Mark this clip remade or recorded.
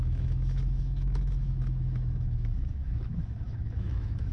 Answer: remade